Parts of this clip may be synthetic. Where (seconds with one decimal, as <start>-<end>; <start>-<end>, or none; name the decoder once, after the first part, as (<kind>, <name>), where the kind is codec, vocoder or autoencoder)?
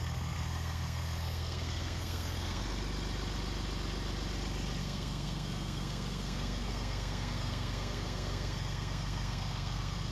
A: 0.0-2.6 (codec, SNAC); 4.8-10.1